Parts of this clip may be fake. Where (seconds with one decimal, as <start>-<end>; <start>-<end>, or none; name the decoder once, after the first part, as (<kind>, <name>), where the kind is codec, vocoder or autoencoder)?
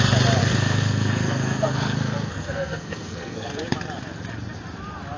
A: 0.4-3.5 (codec, SNAC)